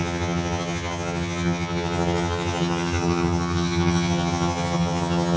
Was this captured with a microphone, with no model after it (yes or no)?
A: no